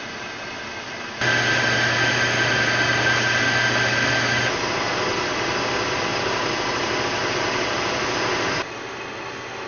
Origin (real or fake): real